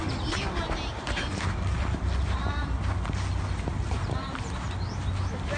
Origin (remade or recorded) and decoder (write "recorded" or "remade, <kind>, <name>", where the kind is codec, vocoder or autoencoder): recorded